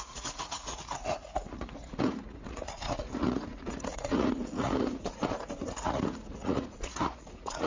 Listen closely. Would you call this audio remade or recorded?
remade